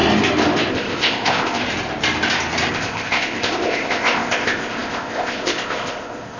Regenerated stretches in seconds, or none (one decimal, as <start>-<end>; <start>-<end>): 0.7-1.6; 2.7-6.4